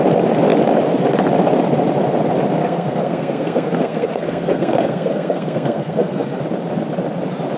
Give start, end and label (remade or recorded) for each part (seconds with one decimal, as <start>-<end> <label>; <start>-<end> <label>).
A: 0.0-2.6 recorded; 2.6-6.4 remade; 6.4-7.6 recorded

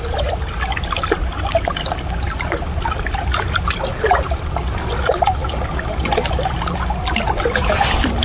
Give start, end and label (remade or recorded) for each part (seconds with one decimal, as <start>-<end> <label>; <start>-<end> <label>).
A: 0.0-8.2 recorded

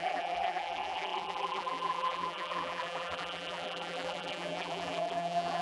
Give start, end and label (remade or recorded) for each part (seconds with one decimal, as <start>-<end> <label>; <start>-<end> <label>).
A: 0.0-5.6 remade

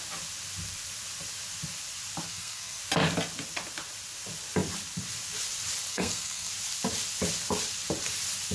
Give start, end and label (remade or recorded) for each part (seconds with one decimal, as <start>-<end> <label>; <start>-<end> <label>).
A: 0.0-2.3 recorded; 2.3-2.8 remade; 2.8-5.9 recorded; 5.9-6.5 remade; 6.5-8.5 recorded